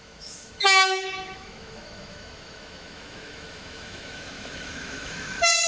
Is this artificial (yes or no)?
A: yes